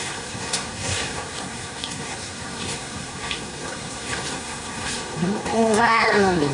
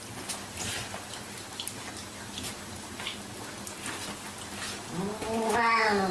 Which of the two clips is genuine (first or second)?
second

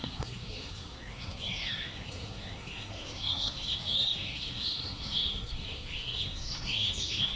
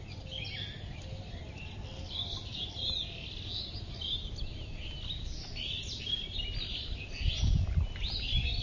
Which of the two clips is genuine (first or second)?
second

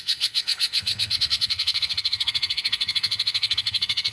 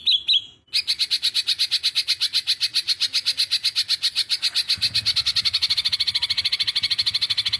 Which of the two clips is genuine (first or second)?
second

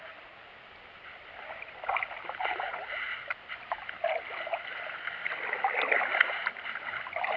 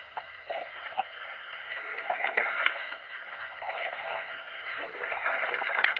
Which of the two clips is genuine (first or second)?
first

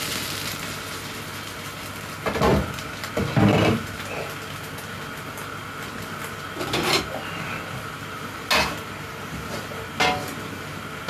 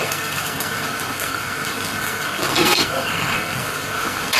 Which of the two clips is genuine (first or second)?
first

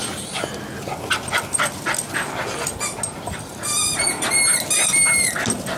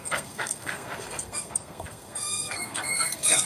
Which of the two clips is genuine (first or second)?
first